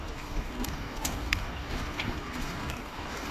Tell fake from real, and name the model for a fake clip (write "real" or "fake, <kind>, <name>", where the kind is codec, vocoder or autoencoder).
fake, codec, DAC